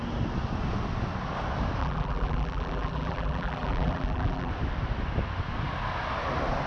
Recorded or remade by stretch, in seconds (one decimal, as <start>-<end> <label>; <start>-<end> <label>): 0.0-1.8 recorded; 1.8-4.5 remade; 4.5-6.7 recorded